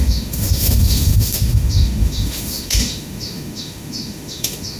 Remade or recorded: remade